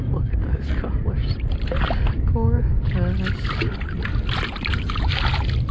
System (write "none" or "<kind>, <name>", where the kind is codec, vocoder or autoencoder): none